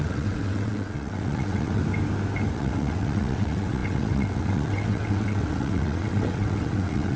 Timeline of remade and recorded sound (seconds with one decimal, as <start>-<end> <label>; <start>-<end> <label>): 0.0-1.8 remade; 1.8-2.5 recorded; 2.5-7.2 remade